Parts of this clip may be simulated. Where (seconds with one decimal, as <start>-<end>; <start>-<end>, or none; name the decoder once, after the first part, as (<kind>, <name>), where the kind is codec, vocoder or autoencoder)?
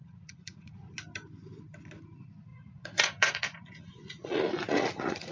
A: 0.0-0.9 (vocoder, Vocos); 2.5-5.3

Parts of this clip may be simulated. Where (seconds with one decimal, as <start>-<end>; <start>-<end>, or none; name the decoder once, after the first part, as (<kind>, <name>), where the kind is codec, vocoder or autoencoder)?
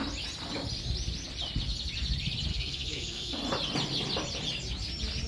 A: 2.5-3.4 (codec, SNAC)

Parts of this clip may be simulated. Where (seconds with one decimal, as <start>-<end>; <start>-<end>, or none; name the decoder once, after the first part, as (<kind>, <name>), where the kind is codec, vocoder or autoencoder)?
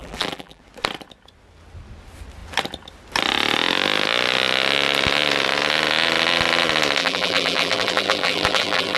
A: 0.0-0.6 (vocoder, BigVGAN v2); 7.0-9.0